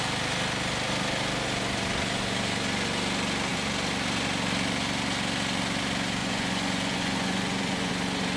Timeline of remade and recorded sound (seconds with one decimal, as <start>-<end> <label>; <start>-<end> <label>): 0.0-6.2 recorded; 6.2-7.9 remade; 7.9-8.4 recorded